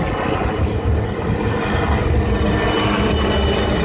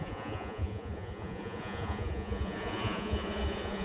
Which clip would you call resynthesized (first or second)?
second